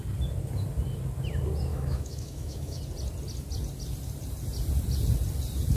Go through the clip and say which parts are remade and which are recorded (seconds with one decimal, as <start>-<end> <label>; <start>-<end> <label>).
0.0-1.7 recorded; 1.7-2.8 remade; 2.8-5.8 recorded